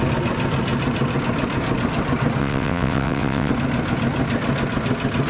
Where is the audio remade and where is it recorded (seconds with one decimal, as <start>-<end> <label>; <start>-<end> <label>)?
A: 0.0-2.4 recorded; 2.4-3.5 remade; 3.5-5.3 recorded